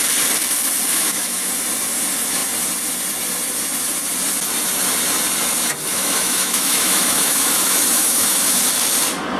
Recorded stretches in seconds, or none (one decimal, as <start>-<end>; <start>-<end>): 0.0-0.9; 1.5-5.9; 8.6-9.4